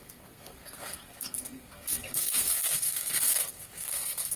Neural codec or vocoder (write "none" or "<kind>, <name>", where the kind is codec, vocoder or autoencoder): codec, SNAC